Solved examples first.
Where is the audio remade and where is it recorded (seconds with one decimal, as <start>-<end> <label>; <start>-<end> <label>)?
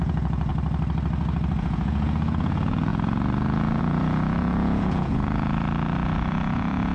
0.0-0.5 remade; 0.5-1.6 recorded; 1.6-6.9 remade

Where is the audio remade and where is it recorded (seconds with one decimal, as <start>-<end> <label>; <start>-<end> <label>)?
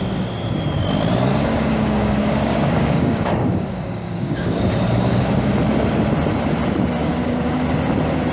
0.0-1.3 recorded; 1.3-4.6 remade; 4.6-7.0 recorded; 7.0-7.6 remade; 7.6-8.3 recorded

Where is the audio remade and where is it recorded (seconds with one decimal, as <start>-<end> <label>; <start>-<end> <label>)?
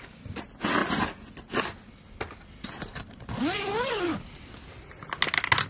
0.0-5.7 recorded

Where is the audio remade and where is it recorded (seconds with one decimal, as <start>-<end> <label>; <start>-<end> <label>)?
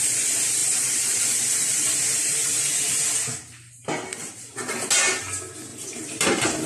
0.0-0.6 recorded; 0.6-2.9 remade; 2.9-4.2 recorded; 4.2-4.7 remade; 4.7-5.7 recorded; 5.7-6.7 remade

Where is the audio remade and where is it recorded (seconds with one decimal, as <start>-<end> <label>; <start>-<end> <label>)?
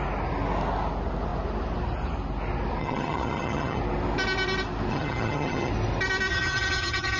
0.0-2.8 recorded; 2.8-3.8 remade; 3.8-4.9 recorded; 4.9-5.7 remade; 5.7-6.3 recorded; 6.3-7.2 remade